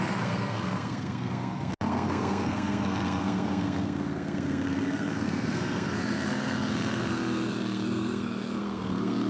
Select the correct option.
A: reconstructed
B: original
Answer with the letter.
A